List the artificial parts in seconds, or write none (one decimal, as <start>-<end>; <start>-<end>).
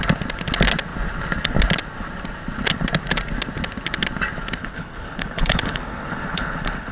4.6-6.9